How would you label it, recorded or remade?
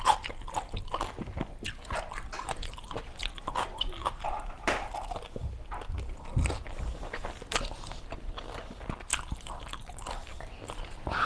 recorded